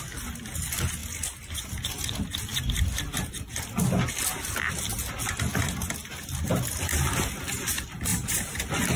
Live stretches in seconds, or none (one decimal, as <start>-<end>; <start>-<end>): 0.0-8.1; 8.6-9.0